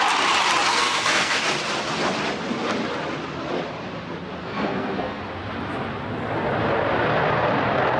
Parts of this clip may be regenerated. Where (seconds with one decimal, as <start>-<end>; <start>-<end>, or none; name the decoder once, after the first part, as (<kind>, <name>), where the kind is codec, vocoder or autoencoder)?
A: 0.7-1.4 (codec, SNAC); 4.4-5.2